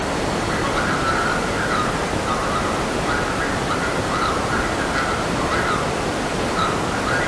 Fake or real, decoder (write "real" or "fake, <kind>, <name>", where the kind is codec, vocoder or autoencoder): real